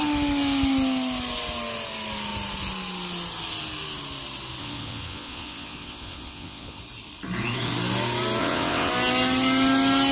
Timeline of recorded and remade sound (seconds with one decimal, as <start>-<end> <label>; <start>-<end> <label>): 0.0-4.6 recorded; 4.6-6.8 remade; 6.8-8.4 recorded; 8.4-8.9 remade; 8.9-10.1 recorded